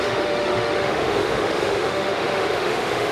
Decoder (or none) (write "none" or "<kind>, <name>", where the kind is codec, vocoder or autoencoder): autoencoder, DAC-VAE